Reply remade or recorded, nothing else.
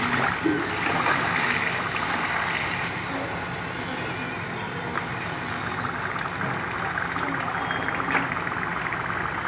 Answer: recorded